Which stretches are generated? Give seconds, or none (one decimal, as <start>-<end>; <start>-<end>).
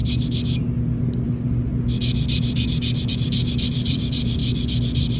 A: 3.1-4.4